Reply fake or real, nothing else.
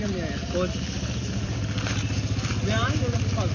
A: real